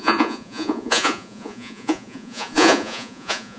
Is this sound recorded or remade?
remade